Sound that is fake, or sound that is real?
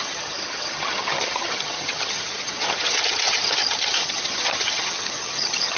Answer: fake